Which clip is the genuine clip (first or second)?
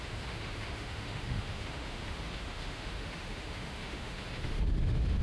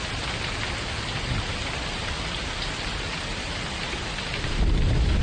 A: second